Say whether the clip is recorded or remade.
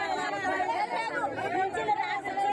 recorded